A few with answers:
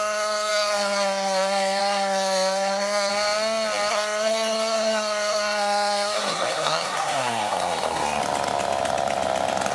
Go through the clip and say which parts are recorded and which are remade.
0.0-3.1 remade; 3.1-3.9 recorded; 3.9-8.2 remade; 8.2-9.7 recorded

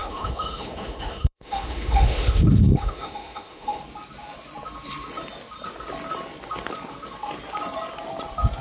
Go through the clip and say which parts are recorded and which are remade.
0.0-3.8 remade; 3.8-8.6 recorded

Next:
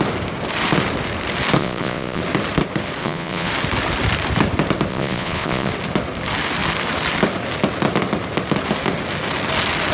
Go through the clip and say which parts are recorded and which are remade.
0.0-1.6 recorded; 1.6-2.2 remade; 2.2-3.0 recorded; 3.0-3.5 remade; 3.5-4.9 recorded; 4.9-5.7 remade; 5.7-9.9 recorded

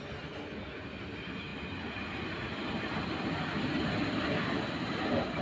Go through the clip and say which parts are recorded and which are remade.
0.0-5.4 recorded

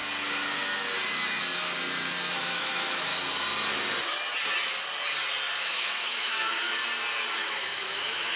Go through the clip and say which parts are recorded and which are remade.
0.0-2.4 recorded; 2.4-3.1 remade; 3.1-5.6 recorded; 5.6-6.8 remade; 6.8-7.4 recorded; 7.4-8.4 remade